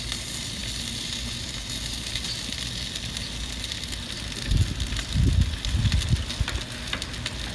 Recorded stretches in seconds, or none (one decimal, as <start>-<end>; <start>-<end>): 0.0-7.5